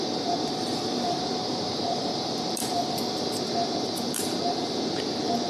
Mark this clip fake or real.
fake